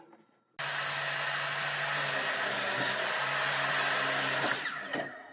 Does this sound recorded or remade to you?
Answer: recorded